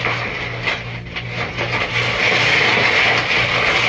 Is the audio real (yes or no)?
yes